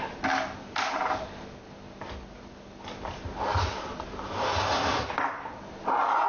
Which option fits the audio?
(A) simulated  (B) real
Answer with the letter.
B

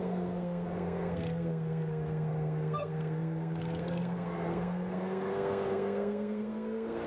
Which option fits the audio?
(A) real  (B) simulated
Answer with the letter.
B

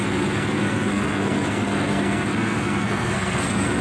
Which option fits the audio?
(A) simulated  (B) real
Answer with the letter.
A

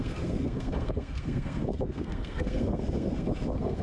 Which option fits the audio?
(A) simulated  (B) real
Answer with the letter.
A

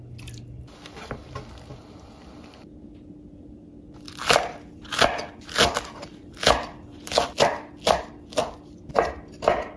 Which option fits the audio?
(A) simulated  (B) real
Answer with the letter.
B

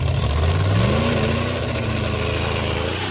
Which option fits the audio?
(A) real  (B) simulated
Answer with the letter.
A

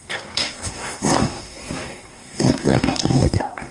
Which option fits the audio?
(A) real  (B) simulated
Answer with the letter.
B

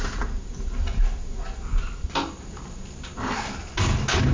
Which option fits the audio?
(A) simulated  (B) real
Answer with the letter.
B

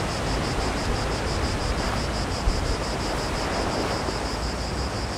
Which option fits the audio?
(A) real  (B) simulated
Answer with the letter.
A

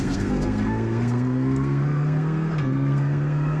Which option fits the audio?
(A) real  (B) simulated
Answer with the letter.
B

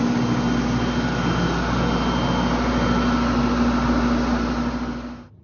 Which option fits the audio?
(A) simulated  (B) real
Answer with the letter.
B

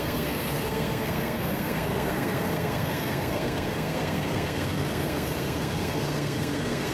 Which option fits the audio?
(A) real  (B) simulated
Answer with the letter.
B